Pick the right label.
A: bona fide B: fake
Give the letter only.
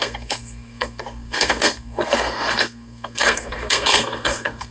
B